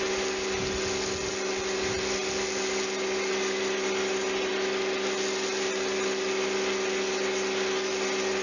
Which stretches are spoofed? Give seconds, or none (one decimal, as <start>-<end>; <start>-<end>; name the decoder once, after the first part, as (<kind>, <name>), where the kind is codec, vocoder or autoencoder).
none